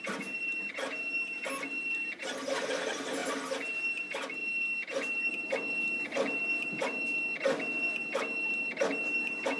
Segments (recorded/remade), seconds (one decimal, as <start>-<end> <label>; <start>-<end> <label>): 0.0-9.6 recorded